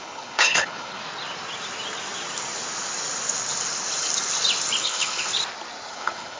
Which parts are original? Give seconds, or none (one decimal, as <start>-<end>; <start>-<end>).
1.0-4.8; 5.3-5.9